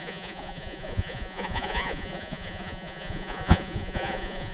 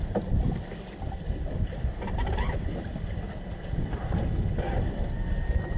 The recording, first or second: second